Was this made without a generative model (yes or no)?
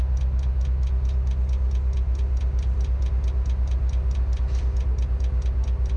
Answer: yes